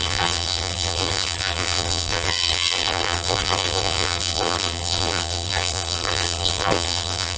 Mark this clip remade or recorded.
remade